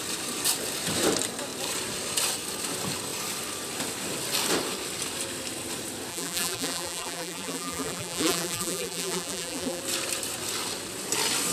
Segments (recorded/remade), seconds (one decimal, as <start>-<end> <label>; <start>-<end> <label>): 0.0-6.1 recorded; 6.1-9.8 remade; 9.8-11.5 recorded